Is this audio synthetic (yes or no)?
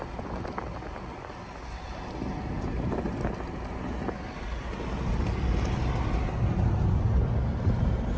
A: no